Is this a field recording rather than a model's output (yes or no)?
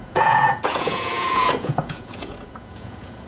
no